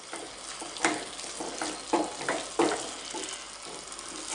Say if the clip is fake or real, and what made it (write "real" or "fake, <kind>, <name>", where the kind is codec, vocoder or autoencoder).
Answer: real